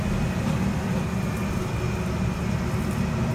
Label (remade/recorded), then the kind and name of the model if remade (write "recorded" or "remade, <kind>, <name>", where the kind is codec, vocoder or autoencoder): recorded